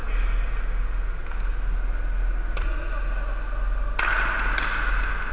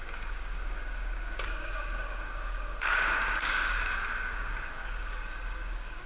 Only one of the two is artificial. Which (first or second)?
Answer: second